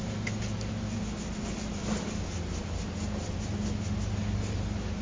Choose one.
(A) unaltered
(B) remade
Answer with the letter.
A